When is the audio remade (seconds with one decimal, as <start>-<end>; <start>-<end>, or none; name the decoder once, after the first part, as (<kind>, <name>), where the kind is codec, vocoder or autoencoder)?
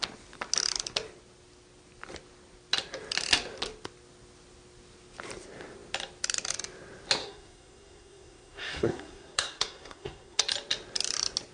7.2-10.4 (codec, SNAC)